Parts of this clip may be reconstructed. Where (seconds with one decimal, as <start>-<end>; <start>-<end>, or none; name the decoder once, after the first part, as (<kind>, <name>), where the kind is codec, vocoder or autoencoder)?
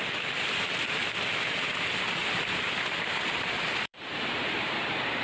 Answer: 2.2-4.5 (vocoder, BigVGAN v2)